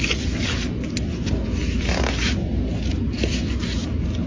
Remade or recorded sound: recorded